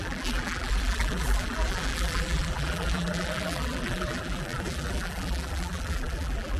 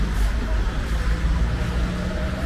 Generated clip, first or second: first